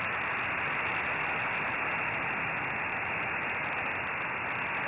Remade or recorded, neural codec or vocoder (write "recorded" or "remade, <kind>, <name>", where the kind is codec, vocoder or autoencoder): recorded